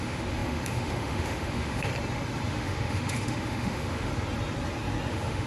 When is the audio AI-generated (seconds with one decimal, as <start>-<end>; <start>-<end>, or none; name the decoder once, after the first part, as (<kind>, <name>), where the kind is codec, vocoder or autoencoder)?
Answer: 0.0-1.9 (autoencoder, DAC-VAE); 2.5-4.1; 5.1-5.5